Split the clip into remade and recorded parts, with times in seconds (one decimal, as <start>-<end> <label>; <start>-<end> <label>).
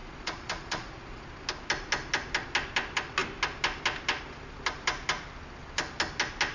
0.0-1.2 remade; 1.2-6.5 recorded